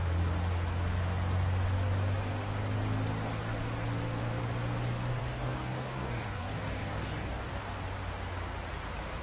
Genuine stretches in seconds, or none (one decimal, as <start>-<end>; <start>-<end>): 0.0-5.2; 7.5-9.2